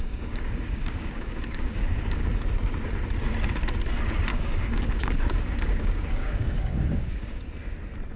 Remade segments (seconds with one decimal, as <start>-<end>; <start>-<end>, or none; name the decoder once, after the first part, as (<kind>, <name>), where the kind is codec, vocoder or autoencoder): 0.0-2.3 (codec, DAC); 4.3-7.4